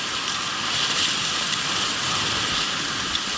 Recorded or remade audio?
recorded